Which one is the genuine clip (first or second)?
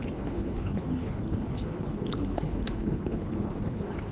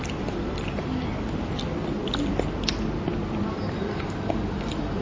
second